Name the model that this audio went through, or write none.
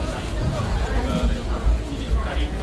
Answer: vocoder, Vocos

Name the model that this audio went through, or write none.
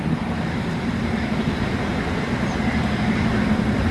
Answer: none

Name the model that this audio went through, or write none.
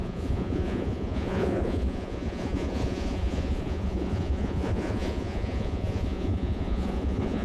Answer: vocoder, Vocos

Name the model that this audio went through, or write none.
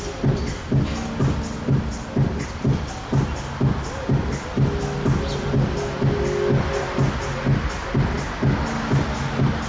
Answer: none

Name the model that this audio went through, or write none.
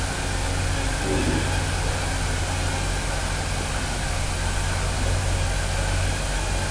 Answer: none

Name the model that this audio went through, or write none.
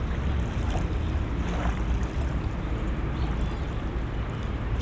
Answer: none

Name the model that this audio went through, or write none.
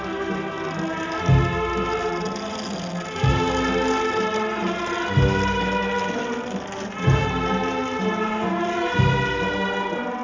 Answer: none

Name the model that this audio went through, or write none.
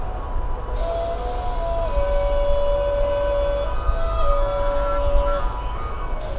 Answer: none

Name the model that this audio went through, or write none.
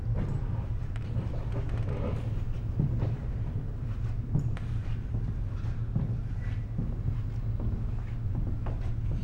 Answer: none